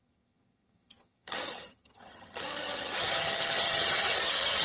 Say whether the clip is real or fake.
fake